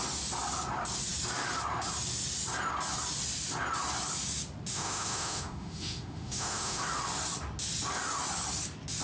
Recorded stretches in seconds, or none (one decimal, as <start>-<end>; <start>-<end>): 0.0-4.7; 6.8-9.0